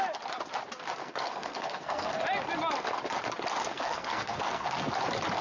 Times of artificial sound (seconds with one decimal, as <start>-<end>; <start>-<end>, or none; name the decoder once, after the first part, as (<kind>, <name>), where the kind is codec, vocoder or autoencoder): 1.0-2.2 (codec, SNAC); 3.6-4.9